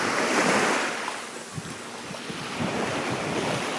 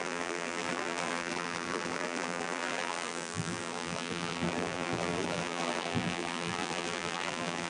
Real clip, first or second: first